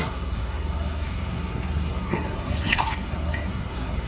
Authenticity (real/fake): fake